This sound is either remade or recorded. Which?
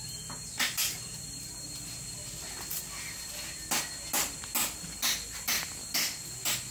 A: recorded